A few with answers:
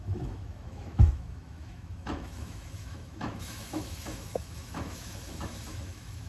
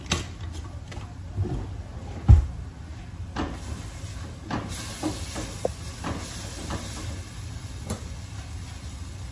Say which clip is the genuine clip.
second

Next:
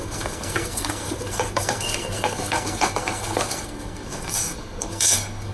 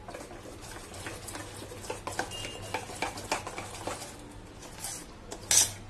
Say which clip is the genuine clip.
second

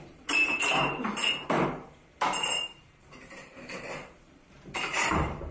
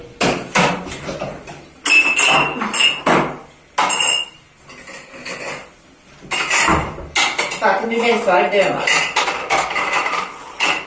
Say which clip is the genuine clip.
second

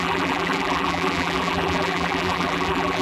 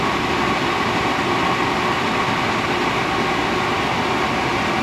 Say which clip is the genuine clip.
second